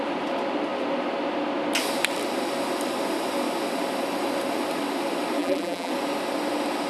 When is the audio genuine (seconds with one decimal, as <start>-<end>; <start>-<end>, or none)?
0.0-5.4; 5.9-6.9